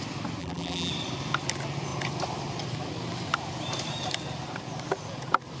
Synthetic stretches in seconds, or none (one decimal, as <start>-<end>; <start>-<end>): 0.4-0.9